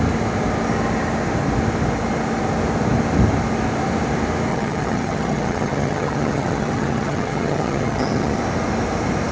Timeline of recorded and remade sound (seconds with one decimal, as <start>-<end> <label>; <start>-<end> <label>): 0.0-4.5 recorded; 4.5-8.4 remade; 8.4-9.3 recorded